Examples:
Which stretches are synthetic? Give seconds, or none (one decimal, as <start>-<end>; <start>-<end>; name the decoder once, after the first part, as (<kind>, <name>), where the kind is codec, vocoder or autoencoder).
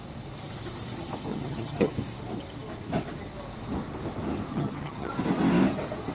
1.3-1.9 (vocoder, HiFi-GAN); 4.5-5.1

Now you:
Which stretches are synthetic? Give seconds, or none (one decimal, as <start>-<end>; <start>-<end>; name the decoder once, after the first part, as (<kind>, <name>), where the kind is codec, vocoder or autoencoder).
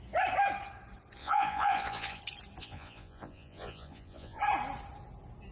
1.2-2.2 (vocoder, Vocos); 2.6-4.4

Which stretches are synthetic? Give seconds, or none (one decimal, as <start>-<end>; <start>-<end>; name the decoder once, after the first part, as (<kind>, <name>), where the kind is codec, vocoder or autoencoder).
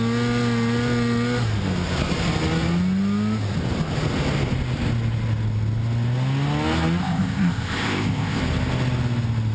7.0-8.4 (codec, ZipCodec)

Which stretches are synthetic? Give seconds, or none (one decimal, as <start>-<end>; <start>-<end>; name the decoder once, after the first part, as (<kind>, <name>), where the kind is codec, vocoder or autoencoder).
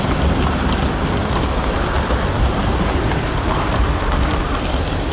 none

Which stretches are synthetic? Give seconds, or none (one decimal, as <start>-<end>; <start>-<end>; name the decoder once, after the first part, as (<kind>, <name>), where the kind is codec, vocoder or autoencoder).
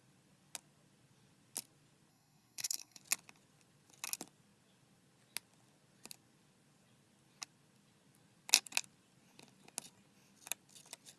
2.1-3.0 (codec, SNAC)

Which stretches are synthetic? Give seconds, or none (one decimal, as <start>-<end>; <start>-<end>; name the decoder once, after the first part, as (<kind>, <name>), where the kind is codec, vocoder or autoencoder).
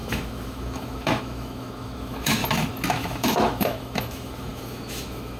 0.0-2.4 (autoencoder, DAC-VAE); 2.9-5.4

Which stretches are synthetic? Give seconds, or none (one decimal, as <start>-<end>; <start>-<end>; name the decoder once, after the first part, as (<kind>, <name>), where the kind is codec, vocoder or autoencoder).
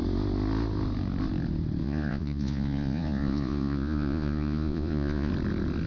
1.8-5.3 (vocoder, Vocos)